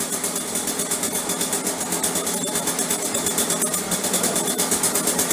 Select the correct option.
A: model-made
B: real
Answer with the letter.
B